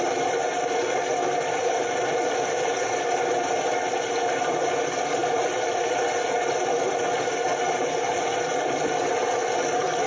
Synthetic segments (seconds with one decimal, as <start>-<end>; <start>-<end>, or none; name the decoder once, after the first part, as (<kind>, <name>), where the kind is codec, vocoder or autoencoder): none